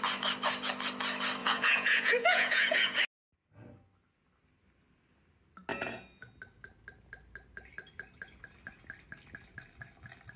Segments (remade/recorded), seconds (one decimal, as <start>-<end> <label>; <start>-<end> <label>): 0.0-1.4 recorded; 1.4-3.0 remade; 3.0-5.7 recorded; 5.7-6.3 remade; 6.3-10.4 recorded